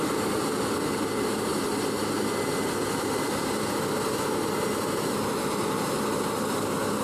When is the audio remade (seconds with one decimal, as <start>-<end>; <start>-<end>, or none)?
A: none